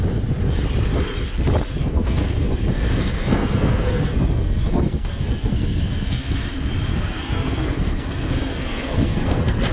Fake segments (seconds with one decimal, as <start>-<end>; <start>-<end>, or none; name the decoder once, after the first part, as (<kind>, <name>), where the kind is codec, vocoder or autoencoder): 1.8-6.5 (codec, SNAC); 6.9-9.7